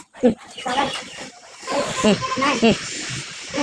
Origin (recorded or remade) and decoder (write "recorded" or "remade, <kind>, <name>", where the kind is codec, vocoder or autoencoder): recorded